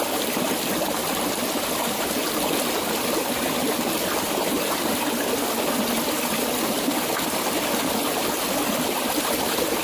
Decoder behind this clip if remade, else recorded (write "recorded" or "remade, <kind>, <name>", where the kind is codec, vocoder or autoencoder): recorded